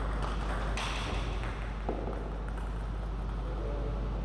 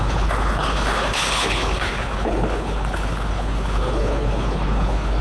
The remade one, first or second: second